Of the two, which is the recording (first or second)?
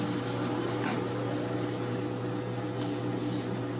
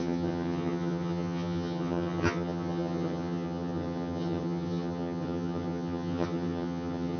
first